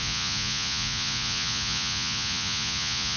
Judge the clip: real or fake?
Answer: fake